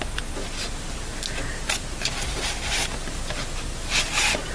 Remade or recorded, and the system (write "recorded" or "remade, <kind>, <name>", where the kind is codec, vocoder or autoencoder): recorded